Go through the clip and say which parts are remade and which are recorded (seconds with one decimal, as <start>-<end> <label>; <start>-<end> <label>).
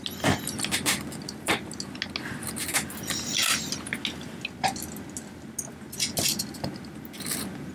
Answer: 0.0-7.7 recorded